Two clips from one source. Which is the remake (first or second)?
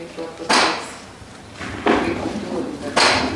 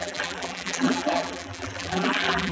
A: second